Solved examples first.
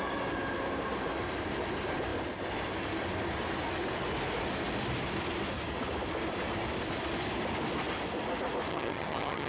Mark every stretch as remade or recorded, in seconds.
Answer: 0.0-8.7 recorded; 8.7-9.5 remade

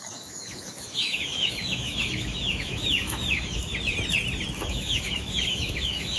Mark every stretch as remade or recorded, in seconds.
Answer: 0.0-3.7 remade; 3.7-4.5 recorded; 4.5-6.2 remade

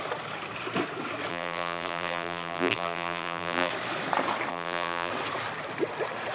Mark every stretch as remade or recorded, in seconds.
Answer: 0.0-1.3 recorded; 1.3-3.7 remade; 3.7-4.5 recorded; 4.5-5.1 remade; 5.1-6.3 recorded

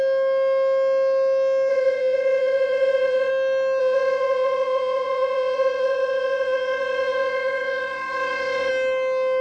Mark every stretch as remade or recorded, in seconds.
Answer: 0.0-1.7 recorded; 1.7-3.3 remade; 3.3-3.8 recorded; 3.8-8.7 remade; 8.7-9.4 recorded

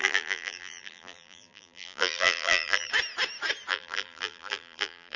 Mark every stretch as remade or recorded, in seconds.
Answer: 0.0-2.9 remade; 2.9-3.7 recorded; 3.7-5.2 remade

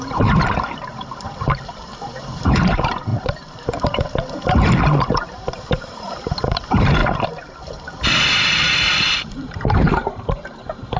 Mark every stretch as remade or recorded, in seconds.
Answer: 0.0-7.0 remade; 7.0-8.3 recorded; 8.3-11.0 remade